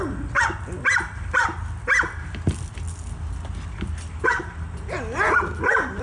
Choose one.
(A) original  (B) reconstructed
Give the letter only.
A